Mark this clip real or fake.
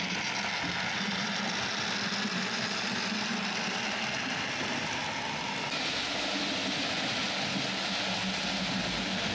real